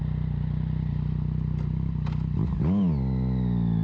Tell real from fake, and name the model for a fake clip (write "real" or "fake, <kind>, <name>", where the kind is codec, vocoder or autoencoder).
real